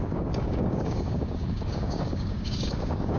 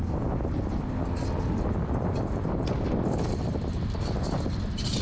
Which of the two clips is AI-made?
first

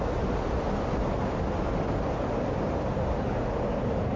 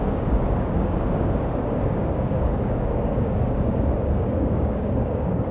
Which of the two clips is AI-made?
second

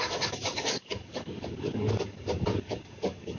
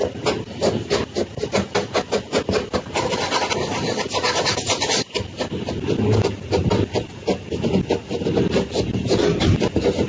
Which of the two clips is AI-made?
first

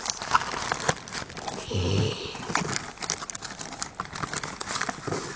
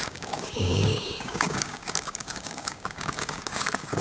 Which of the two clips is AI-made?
second